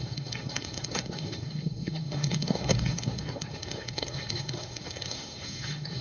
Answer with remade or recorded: remade